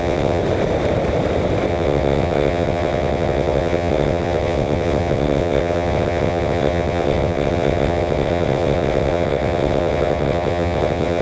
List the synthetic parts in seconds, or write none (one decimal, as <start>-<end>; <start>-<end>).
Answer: 0.0-0.4; 1.7-11.2